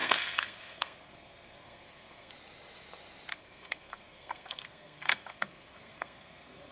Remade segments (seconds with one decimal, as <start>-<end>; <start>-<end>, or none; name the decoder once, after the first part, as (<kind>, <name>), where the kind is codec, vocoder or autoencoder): 0.0-2.3 (codec, SNAC); 3.3-6.7

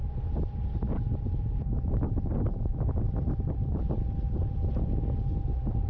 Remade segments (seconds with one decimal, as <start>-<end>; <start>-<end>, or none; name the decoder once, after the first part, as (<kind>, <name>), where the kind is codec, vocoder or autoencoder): none

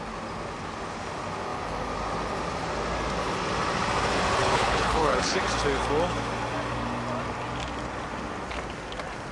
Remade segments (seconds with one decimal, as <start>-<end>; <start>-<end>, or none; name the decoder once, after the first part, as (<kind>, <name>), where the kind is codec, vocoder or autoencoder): 4.4-5.4 (codec, HILCodec)

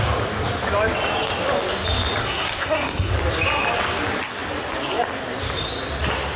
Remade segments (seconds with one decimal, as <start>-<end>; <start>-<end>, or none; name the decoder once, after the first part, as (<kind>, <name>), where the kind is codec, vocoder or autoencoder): 2.2-3.1 (codec, SNAC)

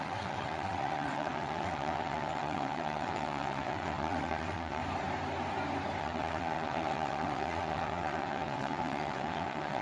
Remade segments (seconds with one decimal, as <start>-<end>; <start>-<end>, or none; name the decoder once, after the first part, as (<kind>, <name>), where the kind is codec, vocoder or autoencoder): 0.0-4.8 (vocoder, WaveNeXt); 6.0-9.8

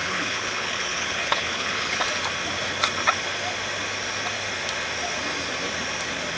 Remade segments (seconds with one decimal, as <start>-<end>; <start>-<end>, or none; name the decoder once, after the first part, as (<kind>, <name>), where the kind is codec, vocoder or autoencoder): 0.0-2.0 (codec, HILCodec)

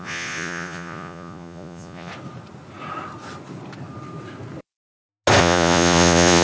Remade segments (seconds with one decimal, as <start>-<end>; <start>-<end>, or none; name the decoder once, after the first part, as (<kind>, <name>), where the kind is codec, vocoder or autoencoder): 0.0-2.1 (vocoder, Vocos); 5.4-6.4